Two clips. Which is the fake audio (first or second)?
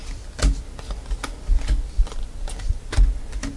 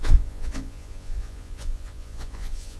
second